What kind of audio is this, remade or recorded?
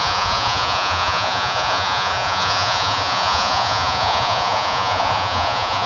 remade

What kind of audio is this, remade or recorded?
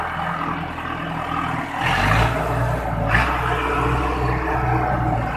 recorded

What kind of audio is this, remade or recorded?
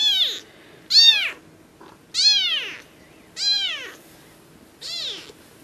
recorded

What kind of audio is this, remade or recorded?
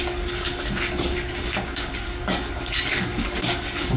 remade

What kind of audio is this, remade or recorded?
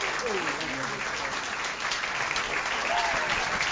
recorded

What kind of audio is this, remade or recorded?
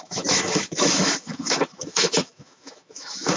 remade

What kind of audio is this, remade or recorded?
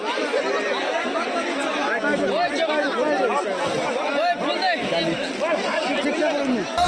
recorded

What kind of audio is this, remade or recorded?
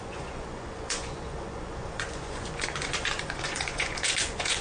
remade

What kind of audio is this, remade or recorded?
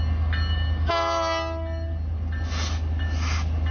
recorded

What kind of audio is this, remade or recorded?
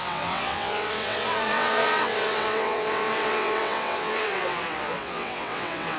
remade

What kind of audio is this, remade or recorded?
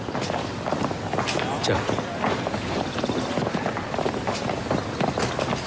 recorded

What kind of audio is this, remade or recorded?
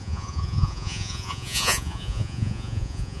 remade